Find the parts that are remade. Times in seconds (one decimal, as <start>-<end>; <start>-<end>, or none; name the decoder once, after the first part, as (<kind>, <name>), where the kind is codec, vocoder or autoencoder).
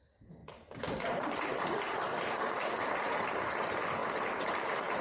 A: 0.4-3.4 (vocoder, BigVGAN v2); 4.0-4.6